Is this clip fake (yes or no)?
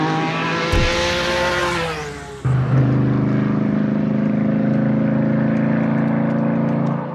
no